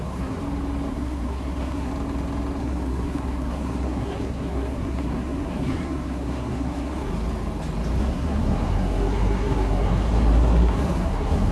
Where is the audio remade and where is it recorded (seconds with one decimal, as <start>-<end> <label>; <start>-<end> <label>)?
0.0-0.4 remade; 0.4-0.9 recorded; 0.9-1.9 remade; 1.9-2.6 recorded; 2.6-7.1 remade; 7.1-8.0 recorded; 8.0-11.5 remade